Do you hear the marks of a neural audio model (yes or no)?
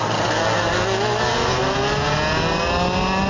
no